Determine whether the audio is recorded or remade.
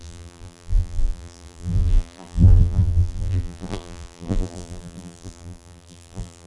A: remade